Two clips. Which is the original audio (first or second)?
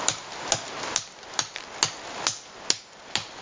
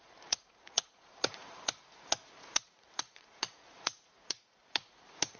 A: first